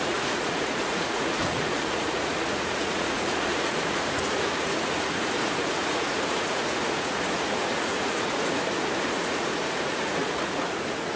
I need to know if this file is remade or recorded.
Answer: remade